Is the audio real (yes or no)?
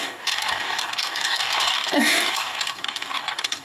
no